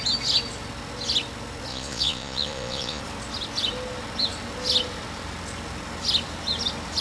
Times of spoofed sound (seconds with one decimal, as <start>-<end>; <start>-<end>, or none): 1.7-3.0